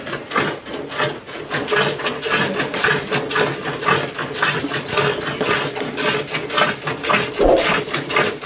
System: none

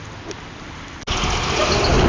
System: none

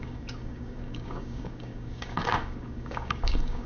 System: codec, DAC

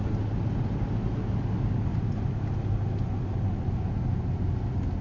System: none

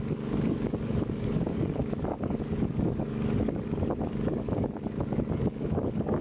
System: codec, DAC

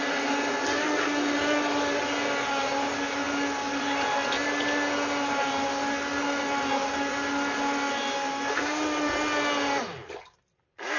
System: none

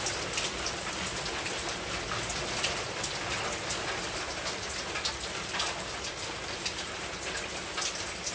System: none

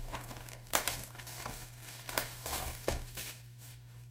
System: codec, DAC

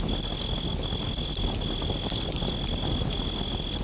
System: none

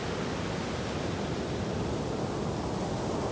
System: none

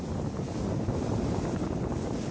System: none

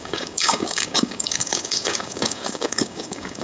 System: codec, DAC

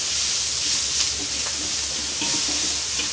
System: none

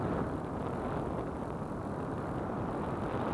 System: none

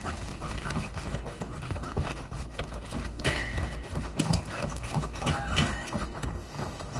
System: codec, DAC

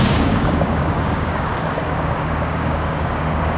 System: codec, DAC